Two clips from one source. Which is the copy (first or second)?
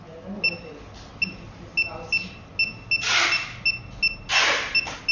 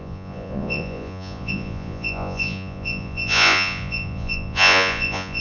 second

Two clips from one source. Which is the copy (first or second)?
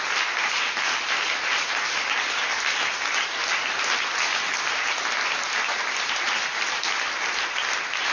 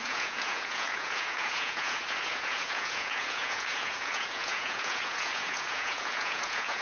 second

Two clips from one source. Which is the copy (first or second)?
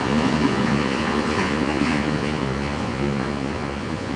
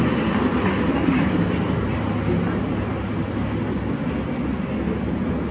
first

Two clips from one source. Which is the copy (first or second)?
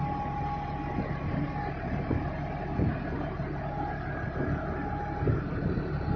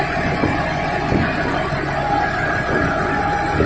second